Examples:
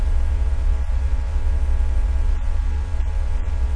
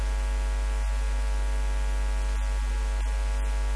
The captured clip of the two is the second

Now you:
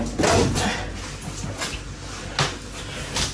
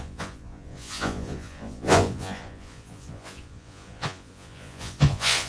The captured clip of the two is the first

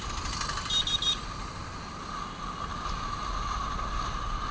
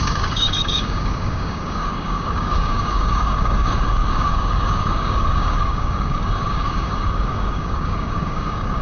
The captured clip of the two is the first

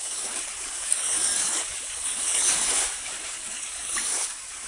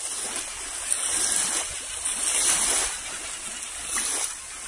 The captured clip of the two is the second